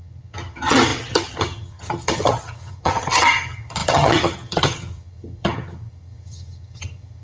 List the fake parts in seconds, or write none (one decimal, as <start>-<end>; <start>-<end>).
0.0-7.2